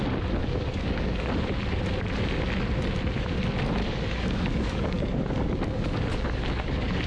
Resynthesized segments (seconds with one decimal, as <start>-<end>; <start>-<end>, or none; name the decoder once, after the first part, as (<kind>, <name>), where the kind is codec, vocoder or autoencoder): 0.4-1.3 (codec, DAC); 3.8-7.1